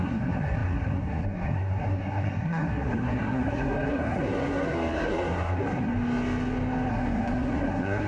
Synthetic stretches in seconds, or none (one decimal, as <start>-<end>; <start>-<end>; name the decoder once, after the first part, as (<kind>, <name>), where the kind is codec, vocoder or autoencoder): 0.0-5.9 (codec, SNAC); 6.9-8.1